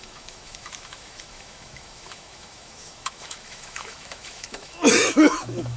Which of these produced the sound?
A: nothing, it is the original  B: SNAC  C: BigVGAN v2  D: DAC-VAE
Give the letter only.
D